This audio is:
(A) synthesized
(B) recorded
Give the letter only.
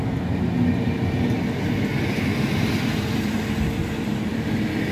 B